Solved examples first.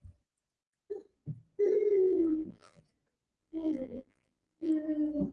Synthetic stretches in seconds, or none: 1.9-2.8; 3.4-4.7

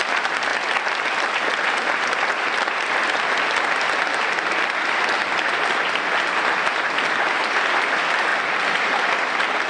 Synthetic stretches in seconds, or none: none